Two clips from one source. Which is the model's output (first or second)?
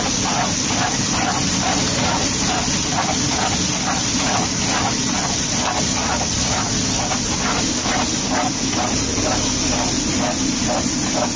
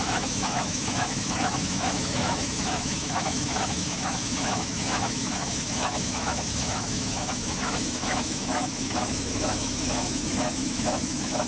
second